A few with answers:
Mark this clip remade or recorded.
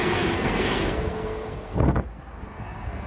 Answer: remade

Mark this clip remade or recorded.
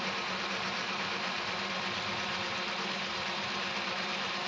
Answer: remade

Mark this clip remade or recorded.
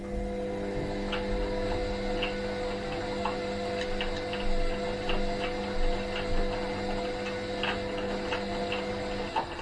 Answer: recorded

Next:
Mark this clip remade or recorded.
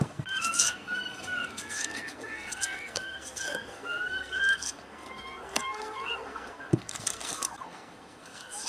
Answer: remade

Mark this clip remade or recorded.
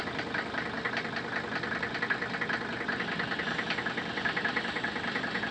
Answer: recorded